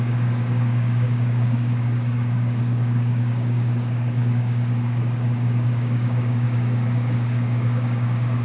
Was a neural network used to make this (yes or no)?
yes